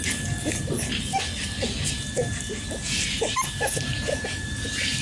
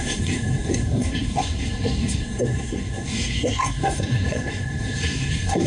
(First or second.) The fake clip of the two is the second